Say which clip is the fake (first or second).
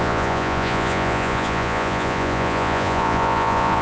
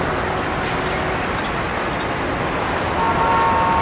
first